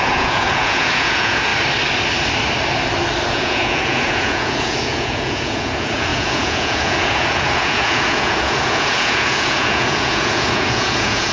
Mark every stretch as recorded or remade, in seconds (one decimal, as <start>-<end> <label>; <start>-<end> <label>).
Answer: 0.0-1.5 remade; 1.5-3.3 recorded; 3.3-11.3 remade